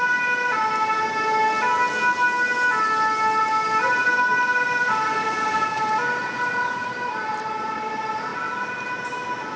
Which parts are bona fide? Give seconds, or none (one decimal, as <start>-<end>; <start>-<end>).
0.6-3.4; 4.3-4.8; 8.3-9.6